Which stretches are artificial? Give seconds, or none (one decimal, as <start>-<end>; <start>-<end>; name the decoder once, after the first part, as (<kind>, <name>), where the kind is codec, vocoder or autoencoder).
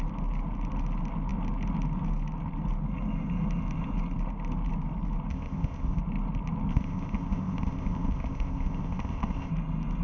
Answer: 5.3-6.0 (codec, ZipCodec); 6.7-9.5